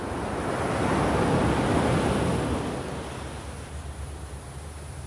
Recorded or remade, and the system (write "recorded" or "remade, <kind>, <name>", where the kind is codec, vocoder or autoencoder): recorded